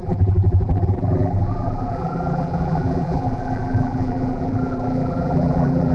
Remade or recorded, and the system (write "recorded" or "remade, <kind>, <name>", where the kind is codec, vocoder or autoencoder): remade, vocoder, BigVGAN v2